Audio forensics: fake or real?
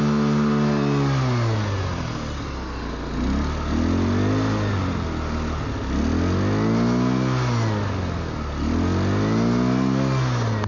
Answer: real